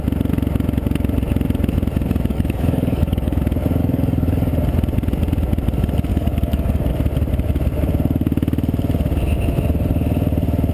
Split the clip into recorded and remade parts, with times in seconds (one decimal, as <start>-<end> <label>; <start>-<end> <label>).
0.0-2.3 recorded; 2.3-3.4 remade; 3.4-3.8 recorded; 3.8-4.5 remade; 4.5-6.1 recorded; 6.1-6.9 remade; 6.9-10.7 recorded